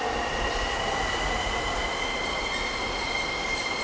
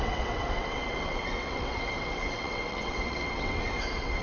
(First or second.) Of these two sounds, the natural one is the first